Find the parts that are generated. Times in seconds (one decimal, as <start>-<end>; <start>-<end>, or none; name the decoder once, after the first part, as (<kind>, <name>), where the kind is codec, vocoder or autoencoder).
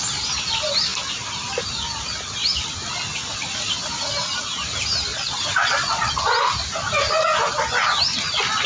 5.1-6.1 (vocoder, Vocos)